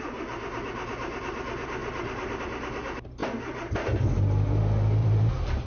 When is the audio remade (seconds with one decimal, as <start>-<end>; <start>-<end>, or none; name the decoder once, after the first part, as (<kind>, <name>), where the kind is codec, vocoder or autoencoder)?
1.8-2.4 (vocoder, BigVGAN v2); 5.0-5.7